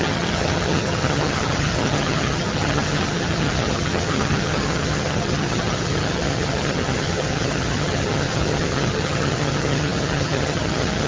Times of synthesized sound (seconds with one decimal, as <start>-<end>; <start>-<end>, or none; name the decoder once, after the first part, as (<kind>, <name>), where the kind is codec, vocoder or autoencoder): 0.0-11.1 (vocoder, HiFi-GAN)